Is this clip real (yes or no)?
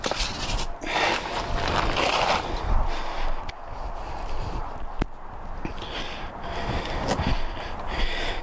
yes